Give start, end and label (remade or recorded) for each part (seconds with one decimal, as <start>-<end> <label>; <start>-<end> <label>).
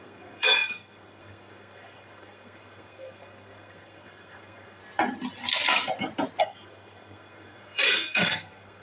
0.0-4.8 remade; 4.8-6.4 recorded; 6.4-8.8 remade